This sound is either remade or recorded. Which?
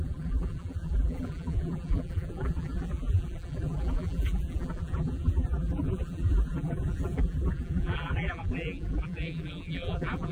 remade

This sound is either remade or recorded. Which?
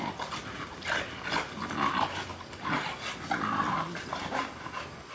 recorded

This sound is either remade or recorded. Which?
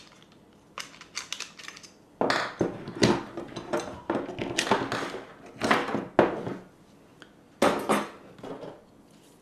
recorded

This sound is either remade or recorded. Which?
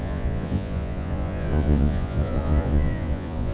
remade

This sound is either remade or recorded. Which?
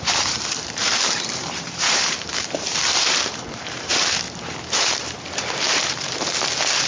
remade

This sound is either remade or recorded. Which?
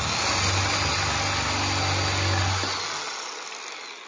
recorded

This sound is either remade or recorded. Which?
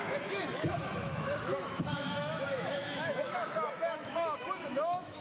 remade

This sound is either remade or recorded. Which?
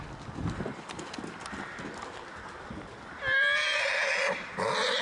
recorded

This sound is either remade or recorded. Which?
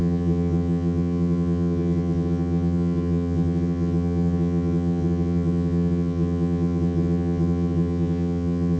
remade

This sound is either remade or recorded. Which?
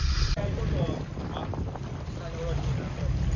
recorded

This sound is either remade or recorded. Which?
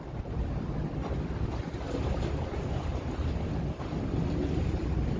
recorded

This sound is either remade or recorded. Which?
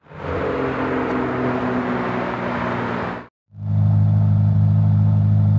recorded